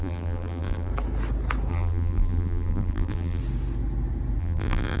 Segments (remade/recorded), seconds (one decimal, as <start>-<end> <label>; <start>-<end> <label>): 0.0-0.9 remade; 0.9-1.7 recorded; 1.7-3.4 remade; 3.4-4.4 recorded; 4.4-5.0 remade